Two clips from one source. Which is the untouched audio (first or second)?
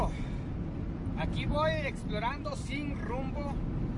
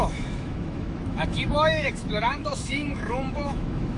first